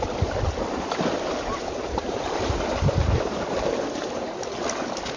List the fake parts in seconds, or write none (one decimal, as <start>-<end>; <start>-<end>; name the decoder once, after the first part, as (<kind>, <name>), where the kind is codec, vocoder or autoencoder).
1.5-4.6 (vocoder, BigVGAN v2)